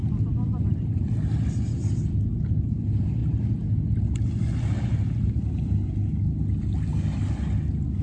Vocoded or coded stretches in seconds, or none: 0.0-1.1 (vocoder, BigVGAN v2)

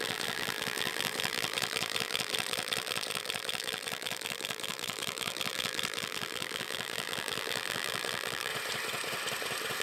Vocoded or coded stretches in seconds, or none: 0.0-8.5 (vocoder, BigVGAN v2)

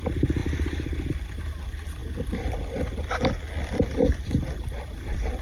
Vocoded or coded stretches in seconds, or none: none

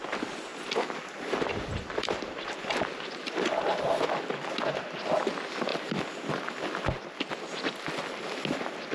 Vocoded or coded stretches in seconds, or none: 0.5-4.5 (vocoder, BigVGAN v2)

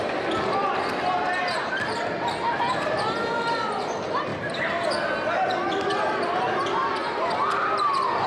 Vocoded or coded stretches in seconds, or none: none

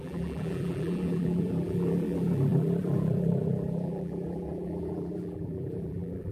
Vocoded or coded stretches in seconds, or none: 0.0-6.3 (vocoder, BigVGAN v2)